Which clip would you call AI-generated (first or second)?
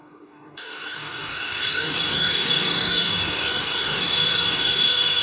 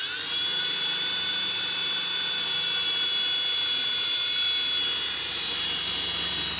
first